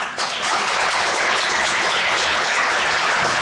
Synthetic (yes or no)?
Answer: yes